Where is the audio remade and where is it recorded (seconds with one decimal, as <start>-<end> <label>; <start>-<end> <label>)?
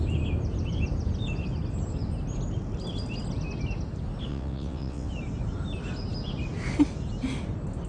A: 0.0-4.3 recorded; 4.3-5.1 remade; 5.1-7.9 recorded